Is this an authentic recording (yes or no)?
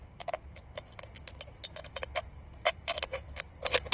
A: yes